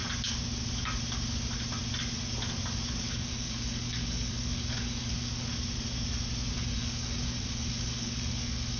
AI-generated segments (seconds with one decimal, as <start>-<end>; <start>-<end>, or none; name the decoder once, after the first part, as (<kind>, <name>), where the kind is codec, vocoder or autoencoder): 3.0-5.5 (codec, DAC); 6.5-8.8